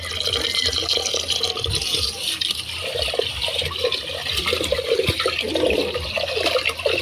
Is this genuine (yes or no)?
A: yes